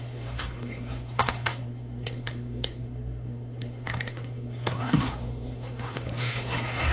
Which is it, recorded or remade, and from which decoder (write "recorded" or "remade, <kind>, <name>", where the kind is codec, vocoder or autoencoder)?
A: remade, codec, SNAC